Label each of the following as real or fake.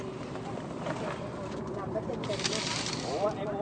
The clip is real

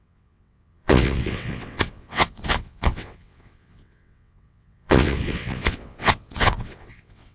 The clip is fake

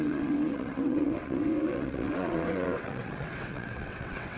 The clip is fake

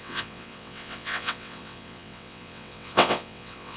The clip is fake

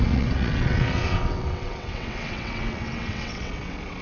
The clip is fake